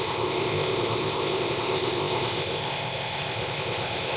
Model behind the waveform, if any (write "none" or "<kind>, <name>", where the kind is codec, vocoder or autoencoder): codec, ZipCodec